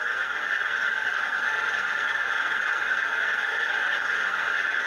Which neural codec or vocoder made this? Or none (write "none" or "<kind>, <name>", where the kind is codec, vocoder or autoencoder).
codec, SNAC